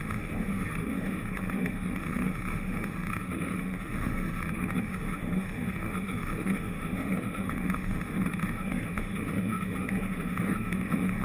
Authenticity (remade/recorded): remade